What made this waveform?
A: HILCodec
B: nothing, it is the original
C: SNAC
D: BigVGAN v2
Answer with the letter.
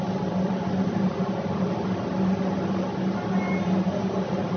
B